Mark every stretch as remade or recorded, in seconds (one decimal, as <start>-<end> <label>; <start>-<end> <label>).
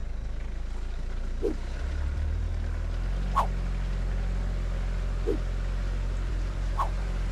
0.0-1.8 recorded; 1.8-2.5 remade; 2.5-6.3 recorded; 6.3-7.3 remade